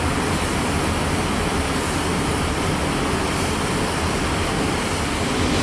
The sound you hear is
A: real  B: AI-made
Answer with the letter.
A